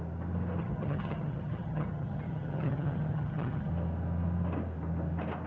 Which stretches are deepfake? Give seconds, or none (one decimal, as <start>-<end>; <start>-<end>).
0.6-3.7